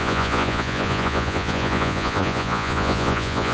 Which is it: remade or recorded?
remade